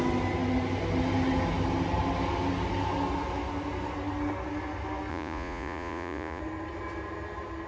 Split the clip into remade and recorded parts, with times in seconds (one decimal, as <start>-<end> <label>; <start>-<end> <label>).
0.0-5.1 recorded; 5.1-6.4 remade; 6.4-7.7 recorded